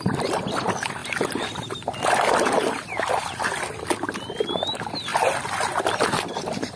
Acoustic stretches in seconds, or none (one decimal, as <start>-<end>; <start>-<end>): 0.0-6.8